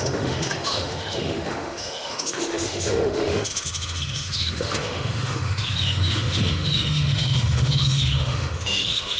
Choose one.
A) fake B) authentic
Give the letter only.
A